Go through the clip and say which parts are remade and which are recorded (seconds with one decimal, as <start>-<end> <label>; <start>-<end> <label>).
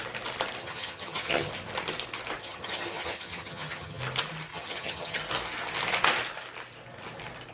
0.0-0.6 recorded; 0.6-1.5 remade; 1.5-2.4 recorded; 2.4-4.0 remade; 4.0-4.5 recorded; 4.5-5.2 remade; 5.2-7.5 recorded